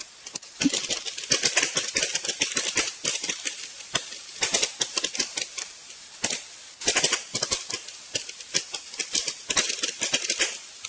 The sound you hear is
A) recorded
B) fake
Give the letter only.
A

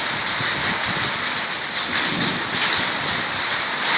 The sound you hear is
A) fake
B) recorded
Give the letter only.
A